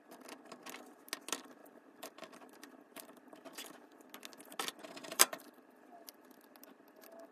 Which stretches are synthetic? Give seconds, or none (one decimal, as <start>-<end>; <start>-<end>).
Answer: 1.6-4.1; 5.0-5.7